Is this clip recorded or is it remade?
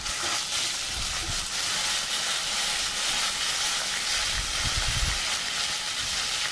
recorded